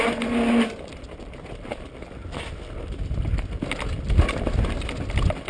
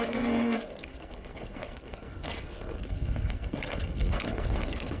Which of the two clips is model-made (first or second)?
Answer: second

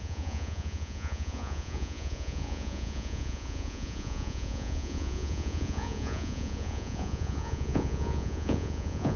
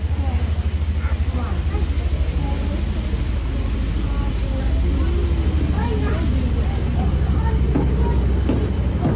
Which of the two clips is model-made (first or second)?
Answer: first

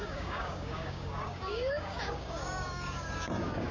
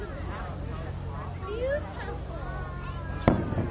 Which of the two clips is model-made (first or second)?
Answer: first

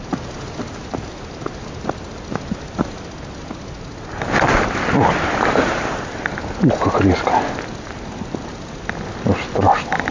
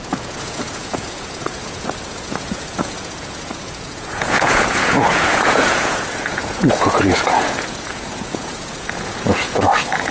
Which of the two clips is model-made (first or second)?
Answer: second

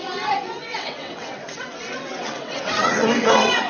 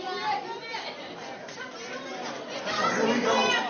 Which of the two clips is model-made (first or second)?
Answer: first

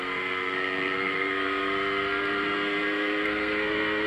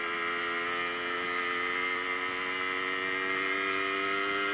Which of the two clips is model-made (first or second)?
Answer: first